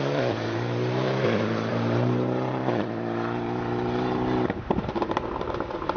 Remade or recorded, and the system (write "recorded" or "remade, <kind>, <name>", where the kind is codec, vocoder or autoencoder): remade, vocoder, BigVGAN v2